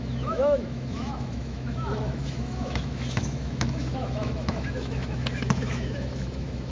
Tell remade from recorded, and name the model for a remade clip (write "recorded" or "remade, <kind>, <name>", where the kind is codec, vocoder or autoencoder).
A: remade, autoencoder, DAC-VAE